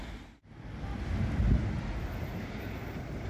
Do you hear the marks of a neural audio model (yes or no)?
no